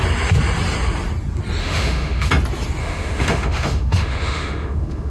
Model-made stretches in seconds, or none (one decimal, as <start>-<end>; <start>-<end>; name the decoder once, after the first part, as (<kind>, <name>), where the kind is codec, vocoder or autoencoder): 1.6-2.3 (autoencoder, DAC-VAE); 2.8-5.1